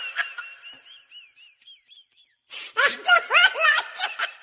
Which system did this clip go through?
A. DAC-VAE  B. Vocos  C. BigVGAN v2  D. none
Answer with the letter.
C